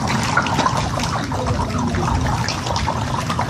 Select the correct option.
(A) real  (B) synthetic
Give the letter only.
A